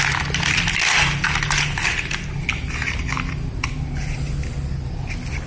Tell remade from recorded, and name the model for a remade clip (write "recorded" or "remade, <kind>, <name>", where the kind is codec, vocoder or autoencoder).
recorded